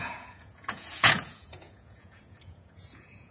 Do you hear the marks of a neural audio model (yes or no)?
yes